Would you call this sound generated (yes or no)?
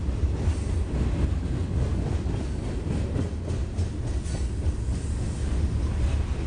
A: no